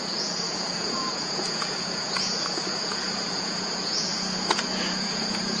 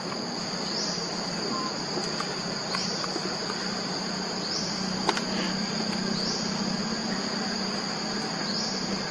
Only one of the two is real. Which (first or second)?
second